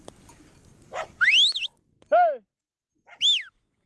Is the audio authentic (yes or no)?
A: yes